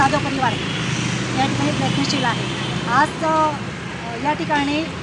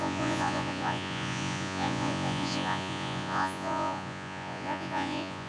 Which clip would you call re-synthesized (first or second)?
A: second